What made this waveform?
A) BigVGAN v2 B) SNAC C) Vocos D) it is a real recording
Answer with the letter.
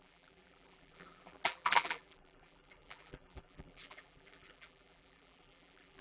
A